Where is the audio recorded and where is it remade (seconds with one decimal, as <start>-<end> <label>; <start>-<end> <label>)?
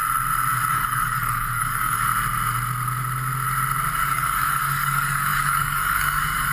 0.0-0.7 recorded; 0.7-2.1 remade; 2.1-4.0 recorded; 4.0-6.5 remade